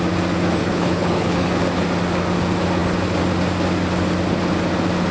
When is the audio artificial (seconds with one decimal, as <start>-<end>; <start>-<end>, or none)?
0.6-1.5

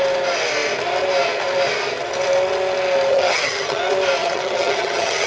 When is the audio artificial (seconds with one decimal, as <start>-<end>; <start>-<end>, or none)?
3.1-3.8; 4.2-5.3

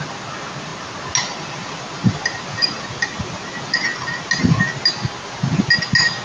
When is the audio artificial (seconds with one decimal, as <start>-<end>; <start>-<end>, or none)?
none

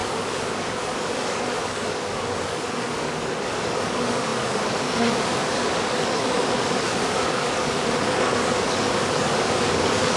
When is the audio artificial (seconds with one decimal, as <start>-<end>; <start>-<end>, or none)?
0.0-10.2